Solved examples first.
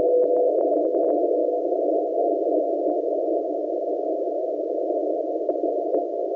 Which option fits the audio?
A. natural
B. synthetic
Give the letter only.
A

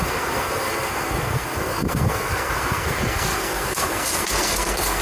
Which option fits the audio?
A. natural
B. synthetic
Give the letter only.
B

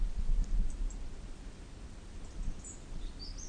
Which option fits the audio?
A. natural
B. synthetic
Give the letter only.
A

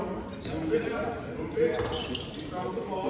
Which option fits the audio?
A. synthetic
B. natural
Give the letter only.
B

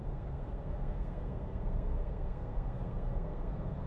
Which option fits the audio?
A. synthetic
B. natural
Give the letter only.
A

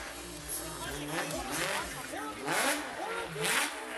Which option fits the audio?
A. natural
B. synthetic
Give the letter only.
A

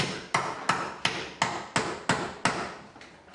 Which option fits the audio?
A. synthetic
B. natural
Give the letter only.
B